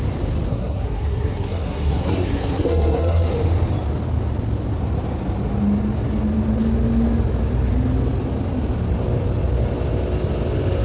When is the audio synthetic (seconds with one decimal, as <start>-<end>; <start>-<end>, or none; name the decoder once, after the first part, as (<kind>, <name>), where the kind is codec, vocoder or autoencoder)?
0.5-3.3 (codec, SNAC)